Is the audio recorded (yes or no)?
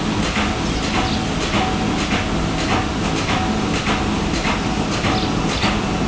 yes